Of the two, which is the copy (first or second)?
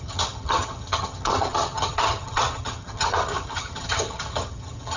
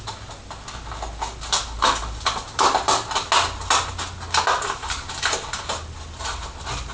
first